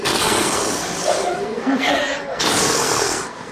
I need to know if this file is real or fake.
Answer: fake